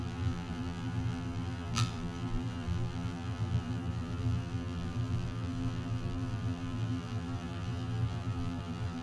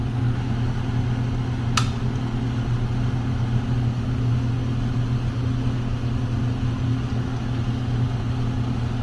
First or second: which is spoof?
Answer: first